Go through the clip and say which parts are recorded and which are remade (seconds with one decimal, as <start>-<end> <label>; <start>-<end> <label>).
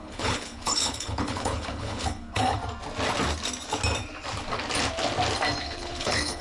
0.0-2.6 remade; 2.6-5.6 recorded; 5.6-6.4 remade